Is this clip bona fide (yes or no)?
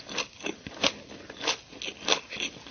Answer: yes